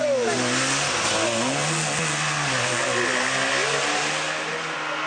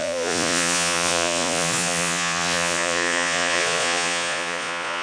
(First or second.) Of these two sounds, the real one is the first